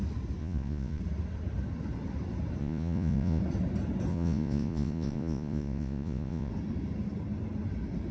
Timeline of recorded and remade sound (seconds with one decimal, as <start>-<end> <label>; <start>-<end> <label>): 0.0-0.4 recorded; 0.4-1.0 remade; 1.0-2.6 recorded; 2.6-3.4 remade; 3.4-4.1 recorded; 4.1-6.5 remade; 6.5-8.1 recorded